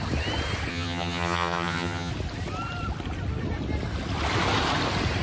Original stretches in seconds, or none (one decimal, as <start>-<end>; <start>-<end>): 0.0-0.7; 2.1-5.2